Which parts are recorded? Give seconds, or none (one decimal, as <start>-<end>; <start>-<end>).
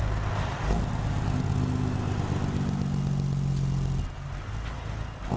0.0-5.4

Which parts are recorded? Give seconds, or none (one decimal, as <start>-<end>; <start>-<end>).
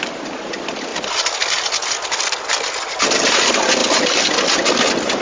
0.0-5.2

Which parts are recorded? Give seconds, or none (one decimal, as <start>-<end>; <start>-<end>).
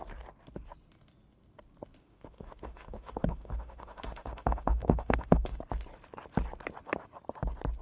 0.0-2.0; 5.6-7.8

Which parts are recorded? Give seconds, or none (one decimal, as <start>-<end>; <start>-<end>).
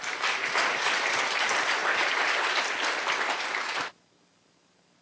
0.0-5.0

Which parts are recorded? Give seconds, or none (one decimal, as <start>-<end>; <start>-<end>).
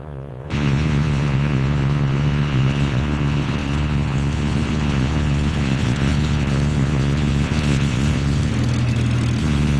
8.5-9.4